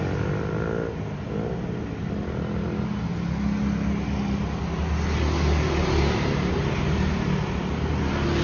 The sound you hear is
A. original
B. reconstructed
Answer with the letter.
A